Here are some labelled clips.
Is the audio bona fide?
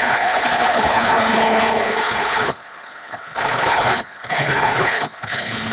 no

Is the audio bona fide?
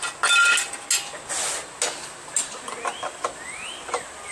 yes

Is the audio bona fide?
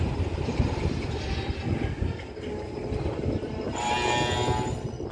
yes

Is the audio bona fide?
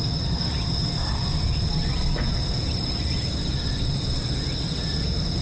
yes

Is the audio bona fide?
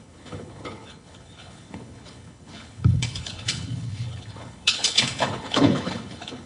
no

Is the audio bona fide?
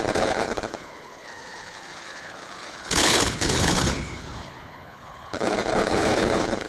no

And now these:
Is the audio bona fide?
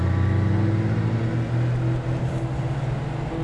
yes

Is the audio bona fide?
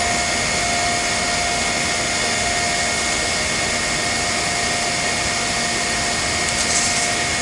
yes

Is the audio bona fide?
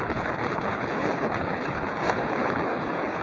no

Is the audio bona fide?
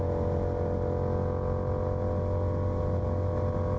yes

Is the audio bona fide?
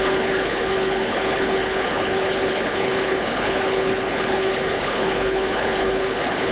no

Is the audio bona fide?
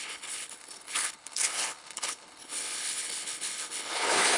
no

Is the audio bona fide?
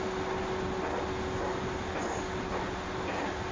yes